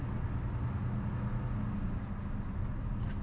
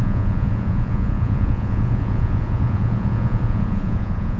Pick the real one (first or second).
first